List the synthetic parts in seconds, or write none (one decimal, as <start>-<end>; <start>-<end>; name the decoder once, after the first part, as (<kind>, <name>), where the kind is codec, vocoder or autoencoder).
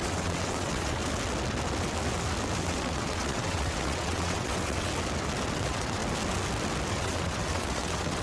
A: 0.0-1.0 (vocoder, WaveNeXt); 2.6-4.9; 5.5-6.0; 6.9-8.2